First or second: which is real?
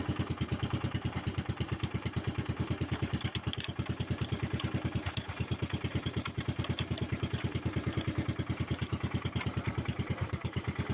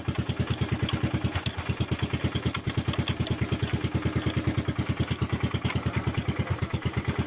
second